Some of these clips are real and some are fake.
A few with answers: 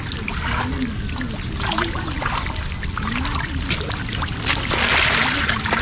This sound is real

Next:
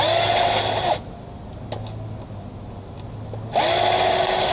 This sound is real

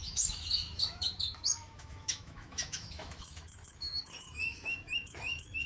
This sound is fake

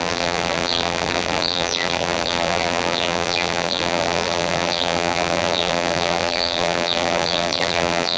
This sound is fake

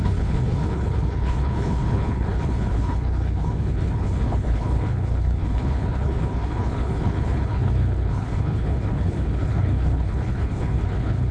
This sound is fake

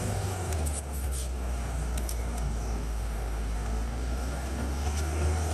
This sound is fake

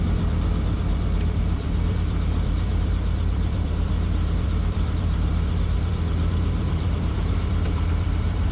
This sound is fake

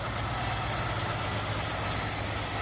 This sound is real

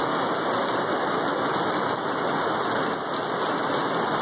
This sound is real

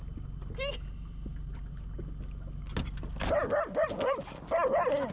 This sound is real